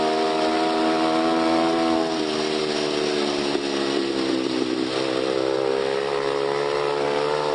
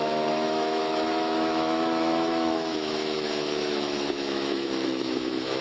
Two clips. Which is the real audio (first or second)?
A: first